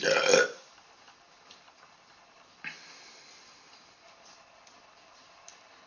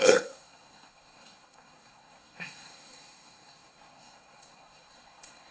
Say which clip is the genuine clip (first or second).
first